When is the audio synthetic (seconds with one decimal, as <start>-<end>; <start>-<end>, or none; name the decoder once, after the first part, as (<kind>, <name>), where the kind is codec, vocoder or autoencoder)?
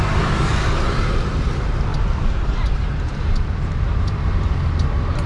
0.0-5.3 (vocoder, BigVGAN v2)